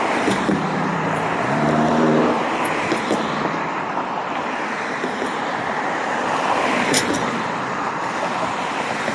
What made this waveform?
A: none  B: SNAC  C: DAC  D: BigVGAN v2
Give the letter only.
D